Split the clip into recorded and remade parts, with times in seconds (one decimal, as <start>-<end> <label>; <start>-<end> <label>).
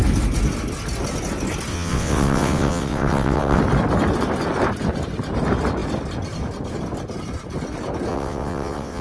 0.0-1.7 recorded; 1.7-3.6 remade; 3.6-8.1 recorded; 8.1-9.0 remade